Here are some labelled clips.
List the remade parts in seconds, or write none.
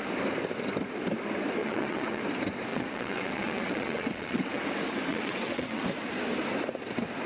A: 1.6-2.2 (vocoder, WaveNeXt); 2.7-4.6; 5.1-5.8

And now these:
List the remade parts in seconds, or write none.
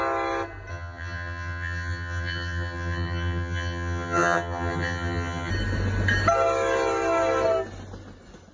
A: 0.7-5.5 (vocoder, HiFi-GAN)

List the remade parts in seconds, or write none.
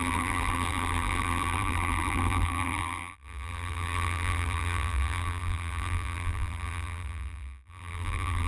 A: 0.0-8.5 (vocoder, BigVGAN v2)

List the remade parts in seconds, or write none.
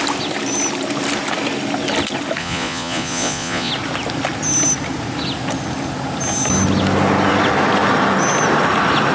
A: 2.4-3.7 (vocoder, Vocos)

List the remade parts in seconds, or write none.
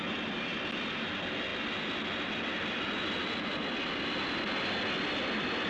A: none